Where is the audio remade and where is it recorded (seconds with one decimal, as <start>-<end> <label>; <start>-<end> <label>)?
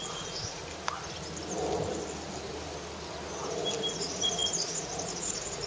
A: 0.0-0.6 remade; 0.6-3.9 recorded; 3.9-5.7 remade